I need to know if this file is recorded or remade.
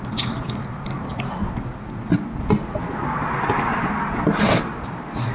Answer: recorded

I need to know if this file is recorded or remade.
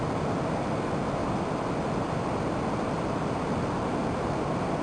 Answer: recorded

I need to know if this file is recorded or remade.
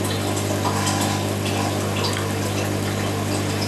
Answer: recorded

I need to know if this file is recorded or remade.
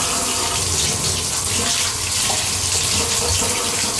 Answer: recorded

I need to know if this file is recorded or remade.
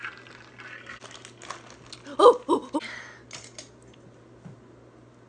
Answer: recorded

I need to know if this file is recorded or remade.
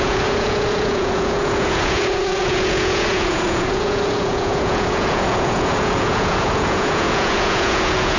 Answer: remade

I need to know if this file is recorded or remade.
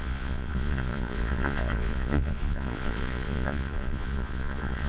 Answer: remade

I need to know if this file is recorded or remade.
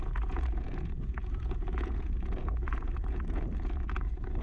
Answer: remade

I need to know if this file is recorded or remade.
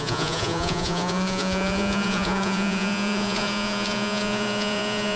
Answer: remade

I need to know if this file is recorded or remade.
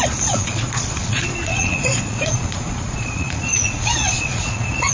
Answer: remade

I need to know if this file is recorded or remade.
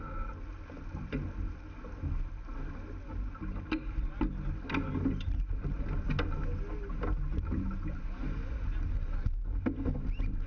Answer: recorded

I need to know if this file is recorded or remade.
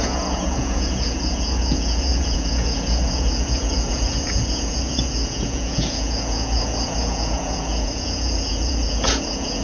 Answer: remade